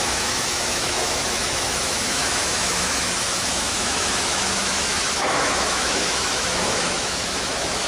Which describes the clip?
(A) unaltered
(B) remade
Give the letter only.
B